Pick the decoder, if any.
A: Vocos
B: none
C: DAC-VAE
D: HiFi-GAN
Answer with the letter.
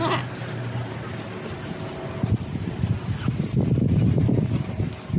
B